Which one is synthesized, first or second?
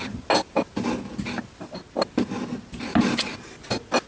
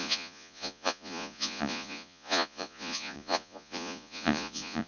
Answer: second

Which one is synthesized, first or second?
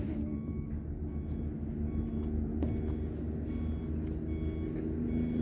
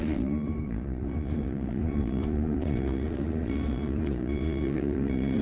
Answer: second